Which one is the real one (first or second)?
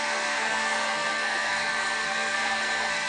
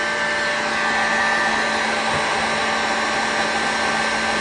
second